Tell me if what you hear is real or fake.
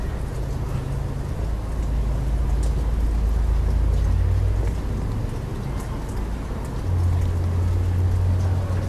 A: real